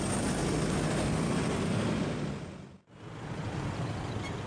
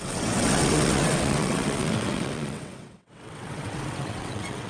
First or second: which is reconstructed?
second